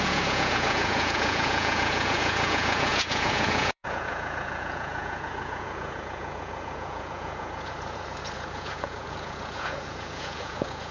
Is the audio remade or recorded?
remade